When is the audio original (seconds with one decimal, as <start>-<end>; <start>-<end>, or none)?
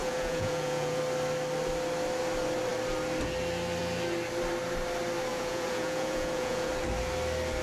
1.0-5.3; 6.7-7.6